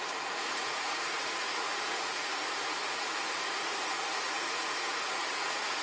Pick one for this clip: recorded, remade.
remade